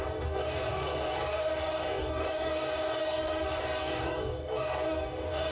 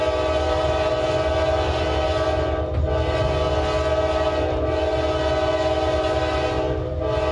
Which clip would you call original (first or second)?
second